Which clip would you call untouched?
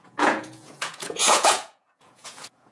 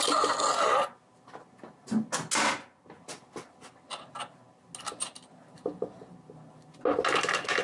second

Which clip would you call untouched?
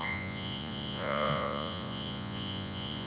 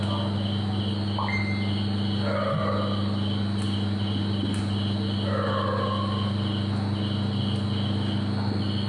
second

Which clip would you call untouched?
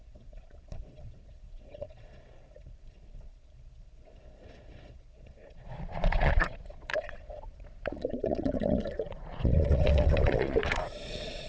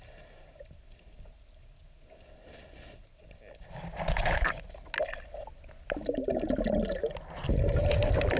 second